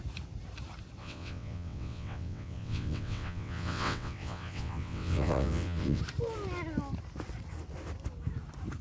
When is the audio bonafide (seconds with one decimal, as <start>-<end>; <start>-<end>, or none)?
0.0-1.0; 6.0-8.8